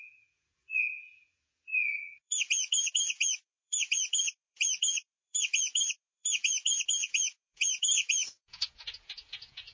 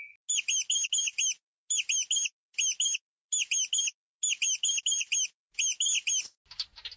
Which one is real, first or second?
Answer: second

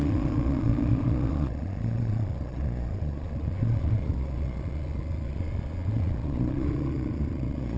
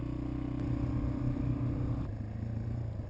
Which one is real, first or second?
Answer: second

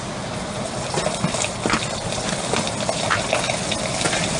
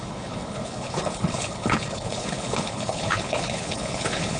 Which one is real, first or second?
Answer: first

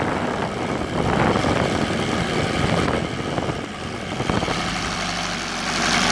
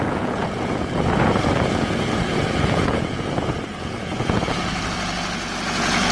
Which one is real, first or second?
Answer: first